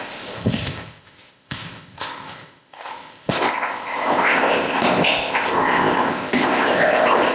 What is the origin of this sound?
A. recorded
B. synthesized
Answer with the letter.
B